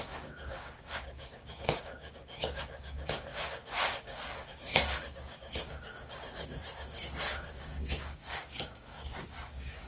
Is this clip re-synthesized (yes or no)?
yes